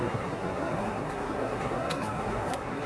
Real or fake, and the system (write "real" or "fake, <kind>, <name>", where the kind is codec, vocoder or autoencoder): fake, codec, SNAC